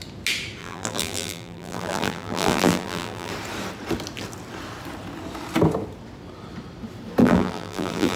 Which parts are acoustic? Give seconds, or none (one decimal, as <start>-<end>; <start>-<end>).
0.0-0.6; 3.3-7.2